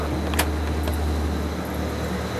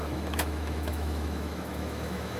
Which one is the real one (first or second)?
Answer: first